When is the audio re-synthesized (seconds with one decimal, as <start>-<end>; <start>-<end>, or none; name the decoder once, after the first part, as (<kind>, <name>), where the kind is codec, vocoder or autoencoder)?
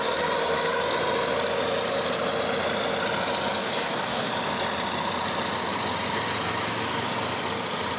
3.6-4.3 (codec, DAC)